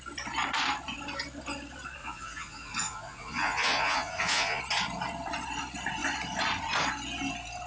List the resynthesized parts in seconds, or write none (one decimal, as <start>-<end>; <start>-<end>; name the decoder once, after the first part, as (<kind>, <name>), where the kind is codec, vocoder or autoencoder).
2.0-4.6 (vocoder, Vocos)